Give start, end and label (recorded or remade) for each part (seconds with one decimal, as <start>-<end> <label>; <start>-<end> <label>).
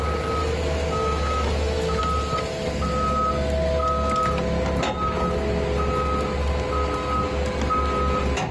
0.0-0.4 recorded; 0.4-2.0 remade; 2.0-8.5 recorded